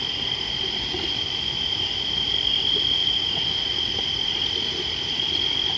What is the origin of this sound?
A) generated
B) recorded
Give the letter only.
A